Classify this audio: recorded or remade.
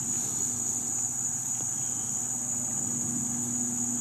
recorded